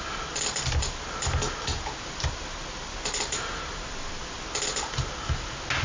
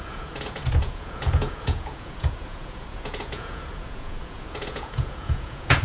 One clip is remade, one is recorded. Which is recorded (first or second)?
first